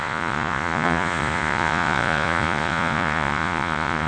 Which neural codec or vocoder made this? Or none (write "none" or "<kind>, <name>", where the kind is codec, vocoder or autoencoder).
vocoder, Vocos